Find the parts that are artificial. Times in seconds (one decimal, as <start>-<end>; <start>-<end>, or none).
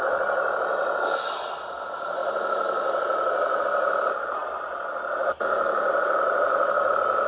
none